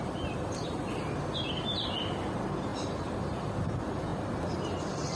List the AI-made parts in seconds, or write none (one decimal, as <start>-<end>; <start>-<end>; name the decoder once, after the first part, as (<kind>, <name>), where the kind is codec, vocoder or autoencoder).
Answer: none